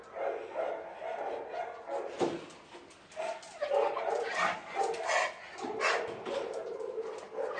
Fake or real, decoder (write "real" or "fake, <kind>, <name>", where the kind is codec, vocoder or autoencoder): real